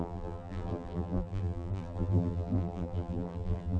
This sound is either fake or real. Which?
fake